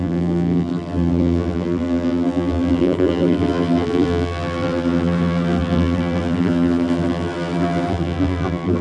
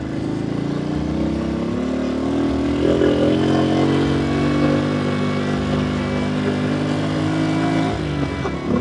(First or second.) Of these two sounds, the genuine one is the second